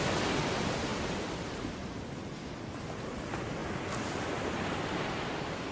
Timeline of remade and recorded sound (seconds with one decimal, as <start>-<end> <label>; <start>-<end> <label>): 0.0-5.7 recorded